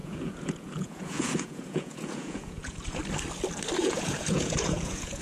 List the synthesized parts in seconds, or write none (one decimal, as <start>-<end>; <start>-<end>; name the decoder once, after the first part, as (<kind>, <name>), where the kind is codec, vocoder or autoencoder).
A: 0.0-3.0 (vocoder, Vocos); 3.8-5.2